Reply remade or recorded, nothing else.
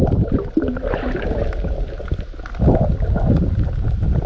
recorded